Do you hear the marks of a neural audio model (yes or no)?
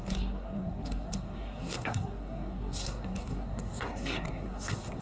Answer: yes